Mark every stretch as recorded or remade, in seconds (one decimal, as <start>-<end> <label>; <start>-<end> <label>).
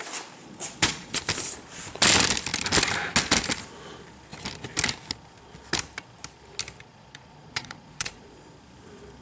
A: 0.0-0.4 recorded; 0.4-1.2 remade; 1.2-6.9 recorded; 6.9-8.5 remade; 8.5-9.2 recorded